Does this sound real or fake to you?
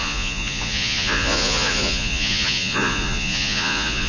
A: fake